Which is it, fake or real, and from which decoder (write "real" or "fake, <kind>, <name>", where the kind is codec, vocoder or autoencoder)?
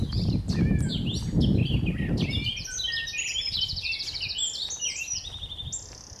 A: real